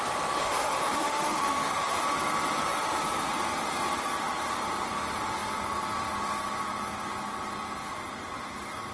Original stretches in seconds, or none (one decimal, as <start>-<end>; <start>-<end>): 0.0-0.4; 2.0-8.9

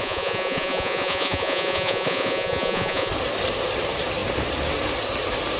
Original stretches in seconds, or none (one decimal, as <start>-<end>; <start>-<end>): 3.1-5.6

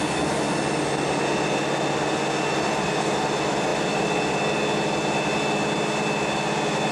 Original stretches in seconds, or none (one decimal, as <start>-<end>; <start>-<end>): 0.0-6.9